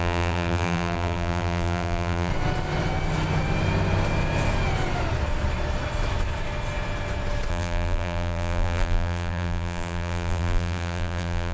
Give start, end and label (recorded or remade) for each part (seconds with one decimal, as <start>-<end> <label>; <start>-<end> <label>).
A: 0.0-2.3 remade; 2.3-7.5 recorded; 7.5-11.5 remade